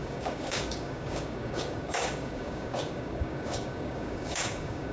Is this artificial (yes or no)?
yes